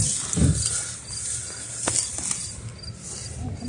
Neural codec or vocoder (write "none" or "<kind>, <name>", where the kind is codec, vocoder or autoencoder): none